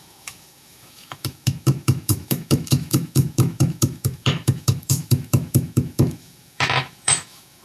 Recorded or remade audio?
remade